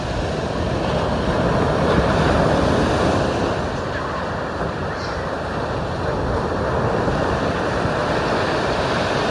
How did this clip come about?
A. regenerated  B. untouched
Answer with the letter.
B